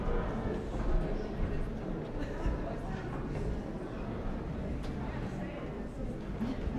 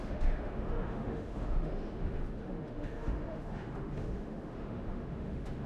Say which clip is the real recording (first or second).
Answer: first